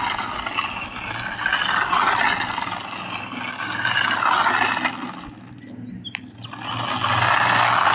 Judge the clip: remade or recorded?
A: recorded